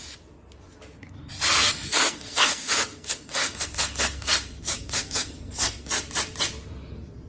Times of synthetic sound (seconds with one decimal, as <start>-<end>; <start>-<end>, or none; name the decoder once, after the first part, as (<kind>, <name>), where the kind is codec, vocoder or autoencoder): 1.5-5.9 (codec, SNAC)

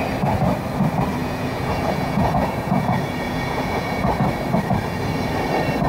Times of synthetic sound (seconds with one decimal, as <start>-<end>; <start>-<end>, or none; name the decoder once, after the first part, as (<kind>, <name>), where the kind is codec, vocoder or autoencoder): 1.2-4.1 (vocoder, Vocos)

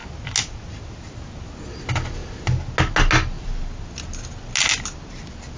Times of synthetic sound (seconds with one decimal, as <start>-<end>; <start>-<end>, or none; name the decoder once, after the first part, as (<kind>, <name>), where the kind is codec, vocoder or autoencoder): none